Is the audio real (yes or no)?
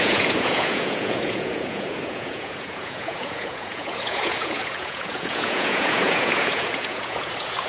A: no